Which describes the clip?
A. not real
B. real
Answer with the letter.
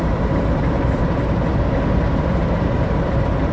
A